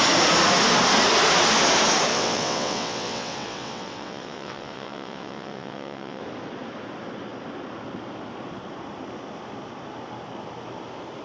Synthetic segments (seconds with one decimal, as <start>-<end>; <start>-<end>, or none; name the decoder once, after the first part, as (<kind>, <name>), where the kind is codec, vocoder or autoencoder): 2.1-6.2 (vocoder, WaveNeXt)

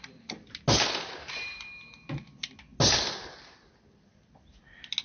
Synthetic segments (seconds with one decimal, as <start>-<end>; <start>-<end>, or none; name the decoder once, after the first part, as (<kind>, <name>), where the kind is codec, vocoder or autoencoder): none

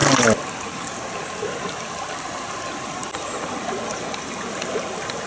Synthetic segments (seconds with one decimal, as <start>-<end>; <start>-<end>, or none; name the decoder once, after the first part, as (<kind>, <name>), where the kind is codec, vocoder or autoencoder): none